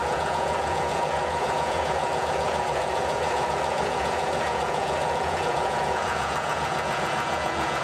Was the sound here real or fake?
fake